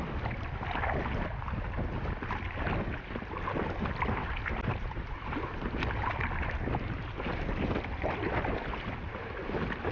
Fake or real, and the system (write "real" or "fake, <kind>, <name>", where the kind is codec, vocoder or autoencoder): real